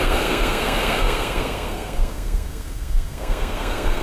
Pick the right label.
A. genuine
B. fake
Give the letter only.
B